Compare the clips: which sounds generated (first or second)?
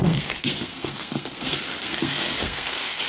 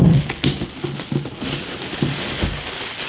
first